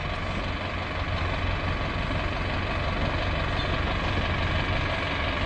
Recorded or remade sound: recorded